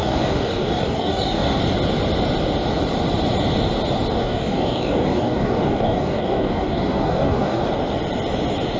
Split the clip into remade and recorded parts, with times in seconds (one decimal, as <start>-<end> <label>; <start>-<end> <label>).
0.0-1.6 remade; 1.6-4.2 recorded; 4.2-7.6 remade; 7.6-8.8 recorded